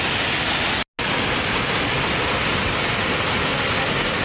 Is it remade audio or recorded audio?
recorded